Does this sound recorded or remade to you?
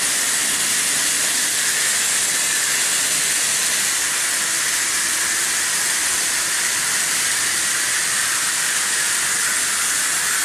recorded